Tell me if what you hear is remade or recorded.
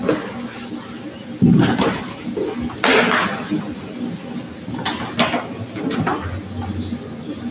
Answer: recorded